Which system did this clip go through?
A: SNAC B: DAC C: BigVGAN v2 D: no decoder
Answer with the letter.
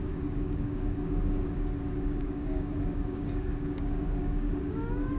B